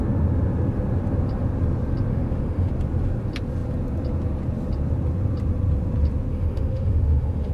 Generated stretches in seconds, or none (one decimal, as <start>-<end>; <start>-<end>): 2.1-2.7; 6.3-7.5